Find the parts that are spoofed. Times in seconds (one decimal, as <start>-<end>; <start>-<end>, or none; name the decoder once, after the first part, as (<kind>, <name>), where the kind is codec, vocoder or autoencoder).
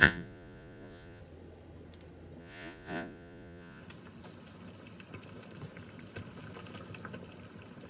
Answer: 0.0-1.2 (vocoder, Vocos); 2.4-3.8